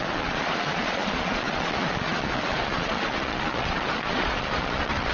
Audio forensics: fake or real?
fake